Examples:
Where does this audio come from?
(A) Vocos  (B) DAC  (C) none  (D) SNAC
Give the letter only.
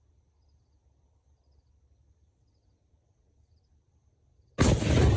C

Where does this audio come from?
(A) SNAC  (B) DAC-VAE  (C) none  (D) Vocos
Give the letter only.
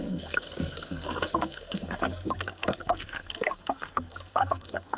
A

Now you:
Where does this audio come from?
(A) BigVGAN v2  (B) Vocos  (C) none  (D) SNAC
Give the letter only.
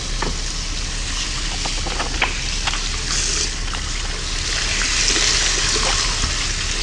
C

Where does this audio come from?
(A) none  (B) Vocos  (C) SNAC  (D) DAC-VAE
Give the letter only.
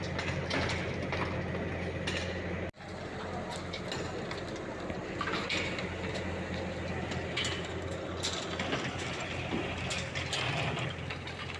A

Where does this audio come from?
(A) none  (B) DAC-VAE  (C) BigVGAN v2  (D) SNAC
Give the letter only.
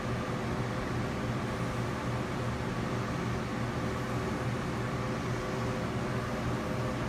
A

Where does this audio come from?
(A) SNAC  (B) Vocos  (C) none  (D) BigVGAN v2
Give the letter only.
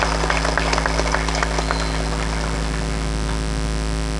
C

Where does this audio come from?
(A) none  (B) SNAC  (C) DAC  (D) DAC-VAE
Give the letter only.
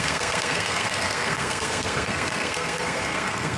B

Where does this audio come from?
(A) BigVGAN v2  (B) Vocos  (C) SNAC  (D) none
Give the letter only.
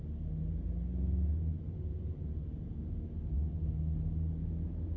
D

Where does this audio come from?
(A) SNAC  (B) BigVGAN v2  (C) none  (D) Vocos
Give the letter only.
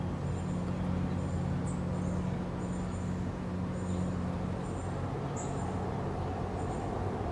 C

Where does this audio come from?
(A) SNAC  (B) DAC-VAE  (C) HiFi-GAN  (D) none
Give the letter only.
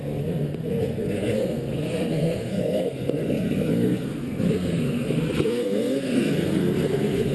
A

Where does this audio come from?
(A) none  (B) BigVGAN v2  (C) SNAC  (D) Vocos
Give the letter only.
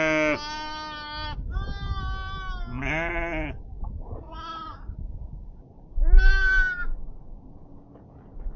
A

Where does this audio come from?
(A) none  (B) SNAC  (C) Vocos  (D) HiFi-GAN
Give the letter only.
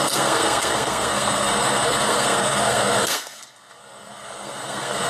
B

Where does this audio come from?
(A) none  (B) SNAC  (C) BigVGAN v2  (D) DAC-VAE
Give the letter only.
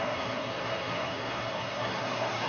B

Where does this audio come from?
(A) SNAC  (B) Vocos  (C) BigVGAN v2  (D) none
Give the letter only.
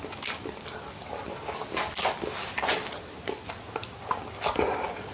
D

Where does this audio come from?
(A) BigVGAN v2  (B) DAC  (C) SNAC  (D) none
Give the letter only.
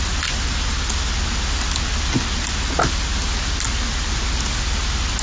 D